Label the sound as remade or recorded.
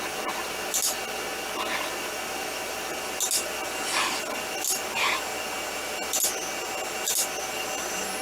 recorded